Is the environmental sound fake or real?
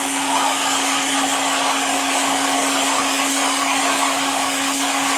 fake